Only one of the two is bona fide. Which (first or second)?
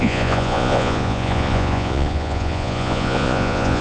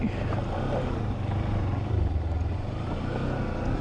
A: second